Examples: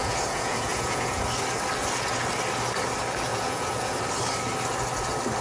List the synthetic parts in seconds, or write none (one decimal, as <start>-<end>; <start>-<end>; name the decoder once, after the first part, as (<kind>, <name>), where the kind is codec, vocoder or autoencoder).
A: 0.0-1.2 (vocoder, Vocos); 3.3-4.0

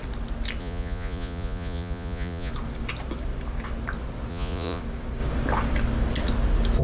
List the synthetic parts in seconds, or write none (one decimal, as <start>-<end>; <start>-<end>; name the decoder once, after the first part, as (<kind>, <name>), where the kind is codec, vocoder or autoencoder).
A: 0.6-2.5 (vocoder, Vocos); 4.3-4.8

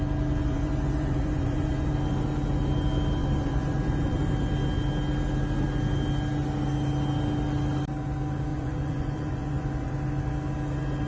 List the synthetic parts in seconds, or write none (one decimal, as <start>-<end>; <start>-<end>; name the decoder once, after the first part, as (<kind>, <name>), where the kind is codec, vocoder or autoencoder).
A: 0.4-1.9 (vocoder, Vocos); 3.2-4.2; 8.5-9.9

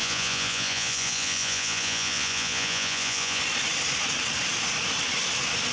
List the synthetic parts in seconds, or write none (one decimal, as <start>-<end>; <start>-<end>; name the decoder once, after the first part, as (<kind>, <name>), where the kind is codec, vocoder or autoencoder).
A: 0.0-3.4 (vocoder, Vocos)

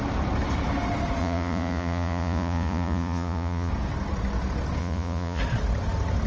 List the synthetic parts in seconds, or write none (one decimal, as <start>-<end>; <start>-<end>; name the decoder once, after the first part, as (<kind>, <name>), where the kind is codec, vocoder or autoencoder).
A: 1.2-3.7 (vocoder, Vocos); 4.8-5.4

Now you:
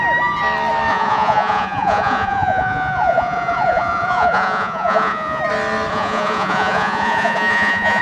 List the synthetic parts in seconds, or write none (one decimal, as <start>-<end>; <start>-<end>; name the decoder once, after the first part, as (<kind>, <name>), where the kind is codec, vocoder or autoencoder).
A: 0.9-5.4 (vocoder, Vocos); 5.9-8.0

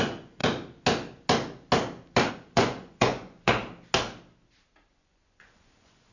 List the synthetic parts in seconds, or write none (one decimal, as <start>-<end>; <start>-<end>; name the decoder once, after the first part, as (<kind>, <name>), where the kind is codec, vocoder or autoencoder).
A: 0.0-0.4 (vocoder, Vocos); 2.3-3.6; 4.9-6.1

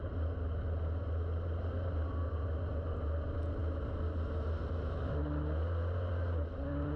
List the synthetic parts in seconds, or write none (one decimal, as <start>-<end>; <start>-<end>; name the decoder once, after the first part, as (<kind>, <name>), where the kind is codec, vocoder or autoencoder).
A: none